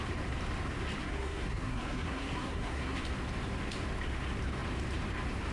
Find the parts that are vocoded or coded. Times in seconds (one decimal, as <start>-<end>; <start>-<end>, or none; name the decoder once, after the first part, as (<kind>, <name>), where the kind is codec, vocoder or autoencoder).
1.0-3.0 (codec, SNAC)